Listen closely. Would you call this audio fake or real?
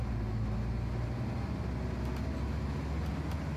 real